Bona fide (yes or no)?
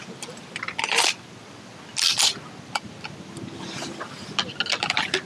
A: yes